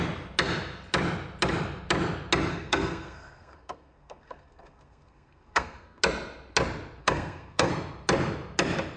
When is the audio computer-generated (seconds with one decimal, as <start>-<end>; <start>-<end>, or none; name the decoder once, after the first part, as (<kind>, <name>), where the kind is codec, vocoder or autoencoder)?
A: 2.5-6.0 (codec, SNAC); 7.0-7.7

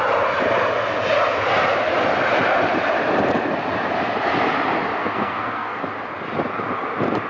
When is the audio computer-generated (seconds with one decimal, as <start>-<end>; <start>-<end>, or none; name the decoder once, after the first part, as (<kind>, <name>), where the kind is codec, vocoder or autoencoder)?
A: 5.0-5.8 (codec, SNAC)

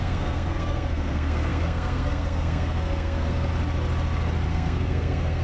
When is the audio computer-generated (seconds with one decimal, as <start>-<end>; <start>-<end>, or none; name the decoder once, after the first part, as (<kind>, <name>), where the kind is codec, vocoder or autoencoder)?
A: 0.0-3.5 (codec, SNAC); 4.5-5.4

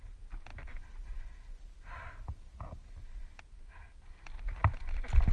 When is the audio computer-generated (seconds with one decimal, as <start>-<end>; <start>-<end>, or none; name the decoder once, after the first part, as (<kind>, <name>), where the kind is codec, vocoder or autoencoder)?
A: none